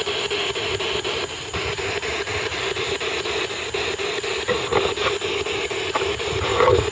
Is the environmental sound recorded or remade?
recorded